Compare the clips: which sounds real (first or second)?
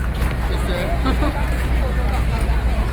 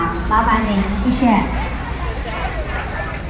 first